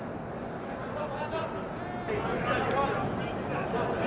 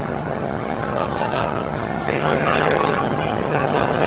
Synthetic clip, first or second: second